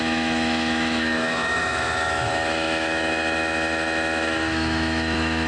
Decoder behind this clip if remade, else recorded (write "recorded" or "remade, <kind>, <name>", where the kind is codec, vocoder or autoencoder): remade, autoencoder, DAC-VAE